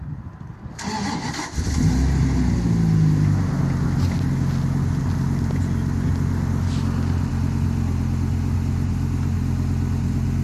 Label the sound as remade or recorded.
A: recorded